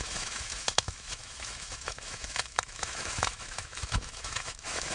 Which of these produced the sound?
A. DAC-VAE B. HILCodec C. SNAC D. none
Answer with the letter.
A